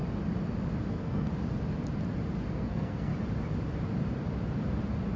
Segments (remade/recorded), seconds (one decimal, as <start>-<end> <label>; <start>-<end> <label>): 0.0-0.9 recorded; 0.9-1.3 remade; 1.3-2.5 recorded; 2.5-3.1 remade; 3.1-5.2 recorded